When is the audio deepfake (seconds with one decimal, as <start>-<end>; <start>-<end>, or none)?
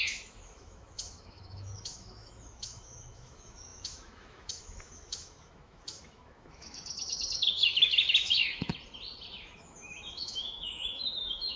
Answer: 0.0-8.7; 9.3-11.6